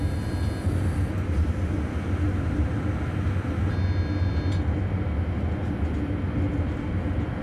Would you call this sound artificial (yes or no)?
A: no